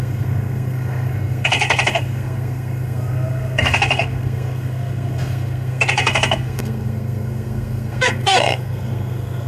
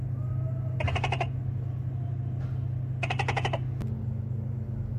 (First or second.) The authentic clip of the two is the second